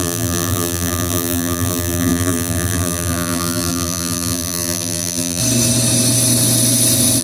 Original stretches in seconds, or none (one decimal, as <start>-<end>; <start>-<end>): 5.4-7.2